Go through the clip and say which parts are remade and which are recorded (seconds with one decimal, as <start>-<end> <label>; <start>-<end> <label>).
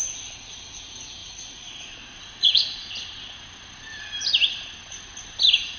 0.0-1.2 recorded; 1.2-2.9 remade; 2.9-5.8 recorded